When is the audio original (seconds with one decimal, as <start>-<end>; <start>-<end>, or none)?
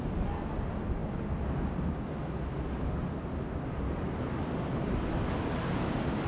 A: 0.0-6.3